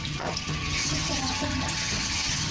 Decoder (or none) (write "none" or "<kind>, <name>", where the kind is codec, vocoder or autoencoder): vocoder, HiFi-GAN